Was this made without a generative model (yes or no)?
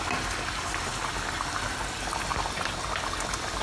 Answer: yes